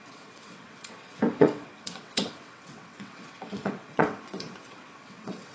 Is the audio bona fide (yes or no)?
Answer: no